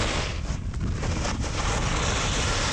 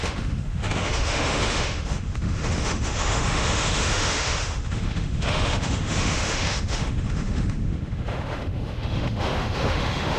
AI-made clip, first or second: second